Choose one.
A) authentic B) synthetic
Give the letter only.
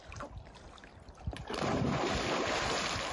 A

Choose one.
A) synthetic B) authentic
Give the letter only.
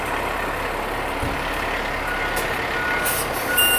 B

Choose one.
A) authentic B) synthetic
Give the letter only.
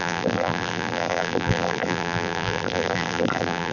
B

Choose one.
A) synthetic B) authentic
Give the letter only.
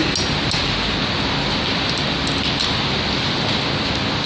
B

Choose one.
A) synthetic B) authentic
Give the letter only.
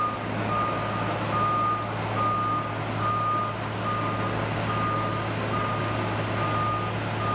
B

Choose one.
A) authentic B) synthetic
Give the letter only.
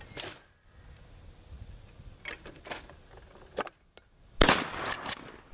A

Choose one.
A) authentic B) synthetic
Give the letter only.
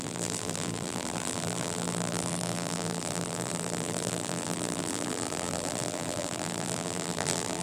B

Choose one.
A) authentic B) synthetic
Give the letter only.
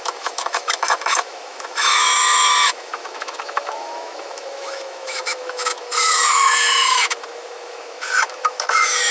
B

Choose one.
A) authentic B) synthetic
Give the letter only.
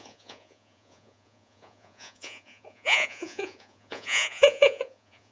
B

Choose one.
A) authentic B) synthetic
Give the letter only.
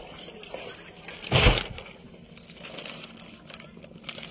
A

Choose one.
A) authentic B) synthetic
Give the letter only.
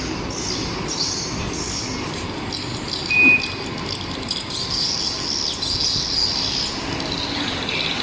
A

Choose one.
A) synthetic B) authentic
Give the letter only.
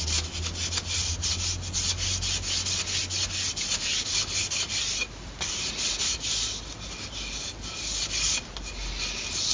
B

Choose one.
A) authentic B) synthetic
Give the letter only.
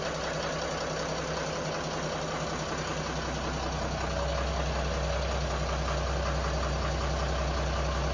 A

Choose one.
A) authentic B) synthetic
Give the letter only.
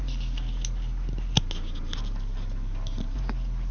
A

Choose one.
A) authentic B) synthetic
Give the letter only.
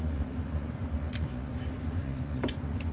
B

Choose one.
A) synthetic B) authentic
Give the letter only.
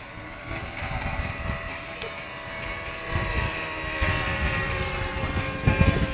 A